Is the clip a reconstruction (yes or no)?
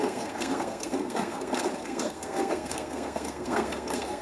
yes